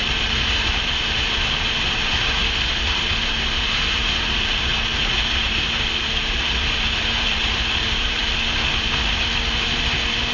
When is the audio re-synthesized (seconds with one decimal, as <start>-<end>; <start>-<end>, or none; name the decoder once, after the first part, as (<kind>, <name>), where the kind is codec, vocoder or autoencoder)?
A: 0.0-2.4 (vocoder, BigVGAN v2); 3.2-4.7; 5.4-8.2; 9.1-10.3